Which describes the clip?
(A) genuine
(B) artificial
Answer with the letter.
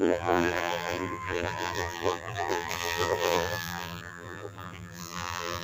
B